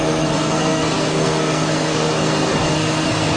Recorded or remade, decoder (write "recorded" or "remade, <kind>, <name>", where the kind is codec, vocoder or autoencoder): remade, codec, SNAC